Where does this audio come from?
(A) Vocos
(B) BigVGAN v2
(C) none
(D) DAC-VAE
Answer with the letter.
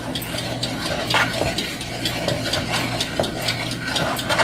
C